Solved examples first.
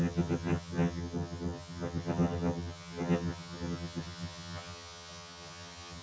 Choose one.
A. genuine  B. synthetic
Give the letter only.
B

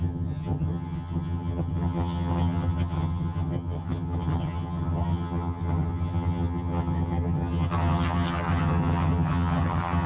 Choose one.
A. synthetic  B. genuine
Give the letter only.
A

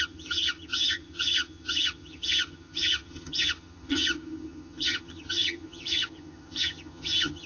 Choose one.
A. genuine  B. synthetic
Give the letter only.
B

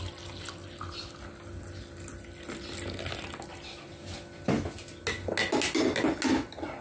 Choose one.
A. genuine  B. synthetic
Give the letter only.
A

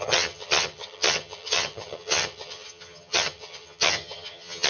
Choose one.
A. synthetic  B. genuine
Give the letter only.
A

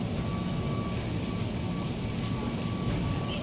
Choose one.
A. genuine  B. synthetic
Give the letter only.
A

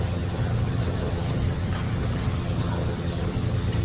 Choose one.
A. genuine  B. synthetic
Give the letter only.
B